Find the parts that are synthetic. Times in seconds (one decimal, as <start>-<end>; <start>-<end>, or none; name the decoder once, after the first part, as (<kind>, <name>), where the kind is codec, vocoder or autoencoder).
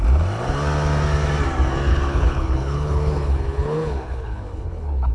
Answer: 1.9-5.1 (codec, HILCodec)